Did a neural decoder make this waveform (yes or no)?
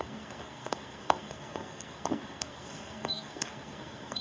yes